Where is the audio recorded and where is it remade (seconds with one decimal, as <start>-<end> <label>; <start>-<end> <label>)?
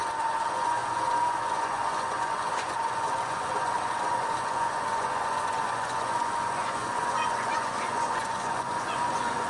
0.0-9.5 remade